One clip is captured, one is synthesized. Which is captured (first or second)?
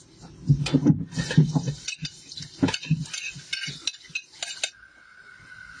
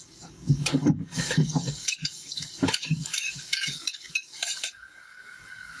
first